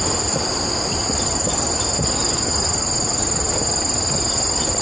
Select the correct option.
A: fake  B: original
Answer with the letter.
B